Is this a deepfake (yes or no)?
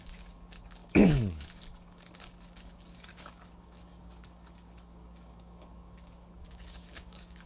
yes